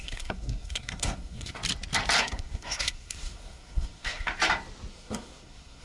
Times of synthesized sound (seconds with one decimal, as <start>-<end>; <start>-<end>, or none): 0.0-1.6; 2.2-4.3; 4.9-5.8